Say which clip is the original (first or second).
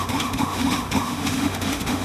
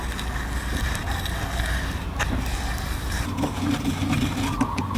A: second